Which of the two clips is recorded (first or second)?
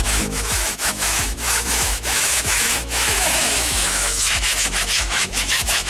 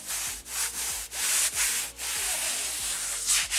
second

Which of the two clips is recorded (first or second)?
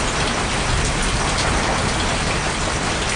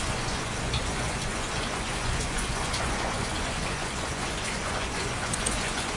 first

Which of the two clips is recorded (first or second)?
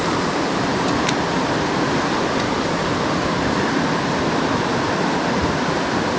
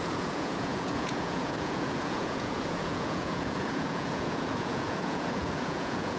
first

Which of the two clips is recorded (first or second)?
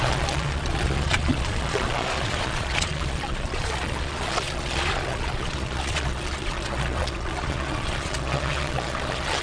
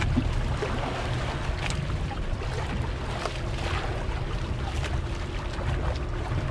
second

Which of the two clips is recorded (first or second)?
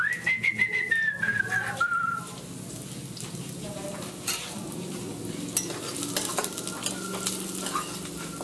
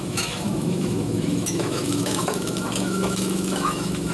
first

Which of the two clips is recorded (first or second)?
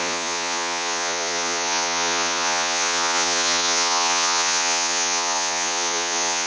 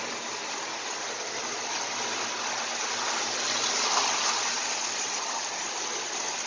second